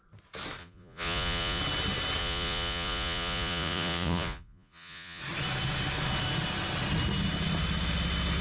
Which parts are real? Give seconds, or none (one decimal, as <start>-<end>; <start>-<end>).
0.0-0.6; 1.6-2.2; 5.2-8.4